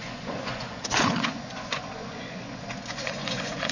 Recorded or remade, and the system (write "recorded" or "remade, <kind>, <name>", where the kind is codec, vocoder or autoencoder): remade, vocoder, Vocos